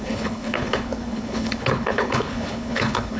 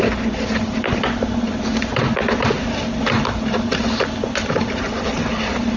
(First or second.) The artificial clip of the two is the first